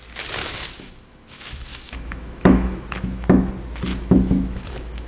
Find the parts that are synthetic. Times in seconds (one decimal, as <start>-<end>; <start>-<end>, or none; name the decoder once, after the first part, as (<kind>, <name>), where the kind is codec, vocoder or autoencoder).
0.4-3.5 (autoencoder, DAC-VAE); 3.9-5.1